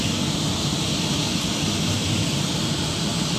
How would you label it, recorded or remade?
recorded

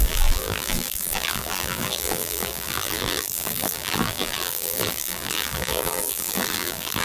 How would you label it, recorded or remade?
remade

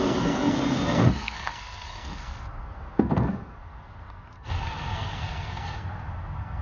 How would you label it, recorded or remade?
remade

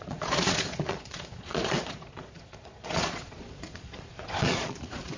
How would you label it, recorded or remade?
remade